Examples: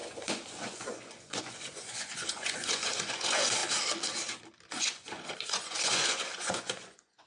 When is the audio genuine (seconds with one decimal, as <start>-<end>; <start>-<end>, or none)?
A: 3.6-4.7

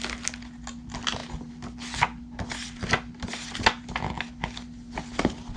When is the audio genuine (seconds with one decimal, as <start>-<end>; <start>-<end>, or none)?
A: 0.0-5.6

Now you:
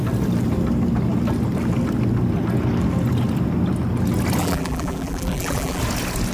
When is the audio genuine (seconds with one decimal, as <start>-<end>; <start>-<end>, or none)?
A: 0.0-4.4; 5.8-6.3